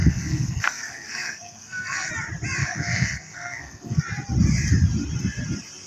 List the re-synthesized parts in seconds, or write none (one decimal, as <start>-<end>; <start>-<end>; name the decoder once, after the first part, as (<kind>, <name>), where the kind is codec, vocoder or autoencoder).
0.0-2.1 (codec, SNAC); 2.6-4.0